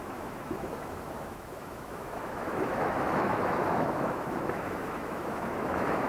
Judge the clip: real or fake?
fake